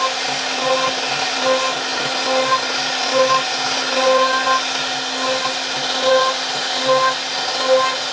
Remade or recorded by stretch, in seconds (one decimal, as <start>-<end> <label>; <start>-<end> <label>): 0.0-8.1 recorded